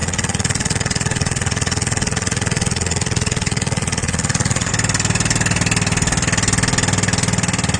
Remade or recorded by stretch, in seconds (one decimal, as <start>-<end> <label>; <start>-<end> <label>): 0.0-4.7 remade; 4.7-7.8 recorded